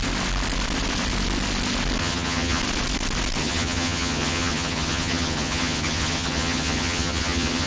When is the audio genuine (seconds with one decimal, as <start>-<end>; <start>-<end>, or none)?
0.0-2.0; 2.6-3.4